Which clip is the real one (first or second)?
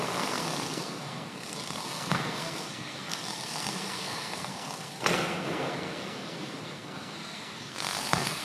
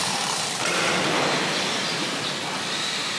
second